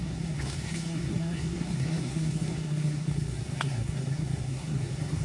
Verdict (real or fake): fake